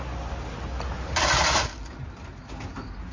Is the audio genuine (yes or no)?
yes